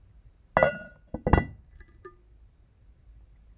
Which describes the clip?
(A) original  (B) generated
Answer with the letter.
A